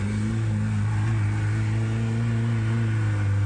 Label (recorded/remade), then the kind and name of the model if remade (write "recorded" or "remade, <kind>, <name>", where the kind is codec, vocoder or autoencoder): recorded